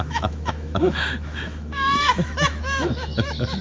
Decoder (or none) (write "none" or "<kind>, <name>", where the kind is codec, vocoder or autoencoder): autoencoder, DAC-VAE